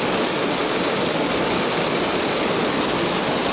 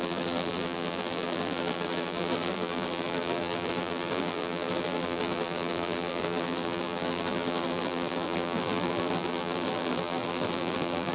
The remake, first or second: second